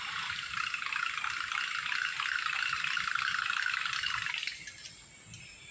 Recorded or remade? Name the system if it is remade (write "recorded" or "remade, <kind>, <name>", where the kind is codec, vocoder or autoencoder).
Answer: recorded